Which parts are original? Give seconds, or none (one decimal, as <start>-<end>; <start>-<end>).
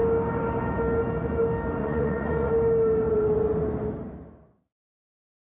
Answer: 0.0-1.8; 2.5-5.5